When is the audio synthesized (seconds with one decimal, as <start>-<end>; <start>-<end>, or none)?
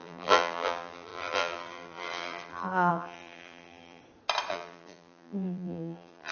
0.0-4.0; 4.5-6.3